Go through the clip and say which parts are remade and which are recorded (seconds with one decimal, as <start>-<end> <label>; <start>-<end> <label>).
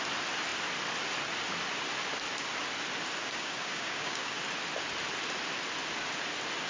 0.0-3.2 recorded; 3.2-4.3 remade; 4.3-6.7 recorded